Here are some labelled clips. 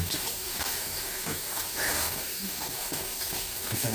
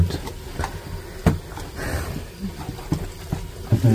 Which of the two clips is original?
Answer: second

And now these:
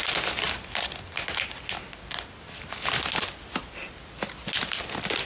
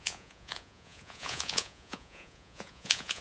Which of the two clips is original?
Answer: first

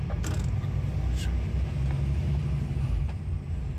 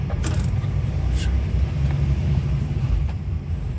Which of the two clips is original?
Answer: first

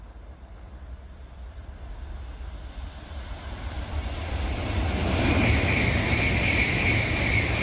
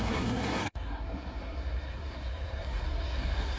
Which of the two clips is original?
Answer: first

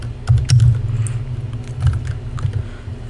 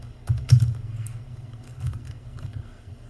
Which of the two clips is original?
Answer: first